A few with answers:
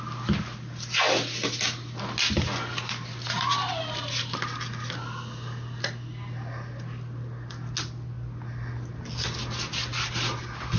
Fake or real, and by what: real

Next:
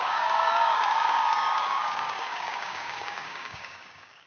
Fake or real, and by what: fake, codec, DAC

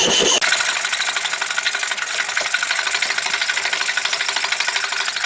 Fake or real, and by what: real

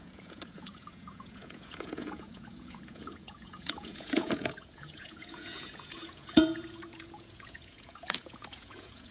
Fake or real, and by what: fake, vocoder, Vocos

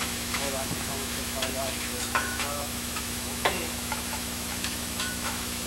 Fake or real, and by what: fake, autoencoder, DAC-VAE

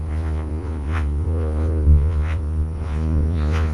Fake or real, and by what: fake, vocoder, Vocos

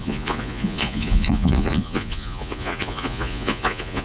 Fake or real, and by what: fake, vocoder, Vocos